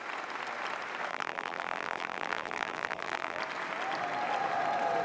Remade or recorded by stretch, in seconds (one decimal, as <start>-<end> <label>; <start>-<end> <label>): 0.0-1.1 recorded; 1.1-3.4 remade; 3.4-5.0 recorded